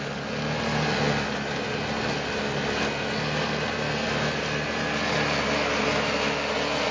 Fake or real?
real